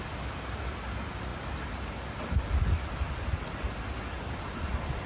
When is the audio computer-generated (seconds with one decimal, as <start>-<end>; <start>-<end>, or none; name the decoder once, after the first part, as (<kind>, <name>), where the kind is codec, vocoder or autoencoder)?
none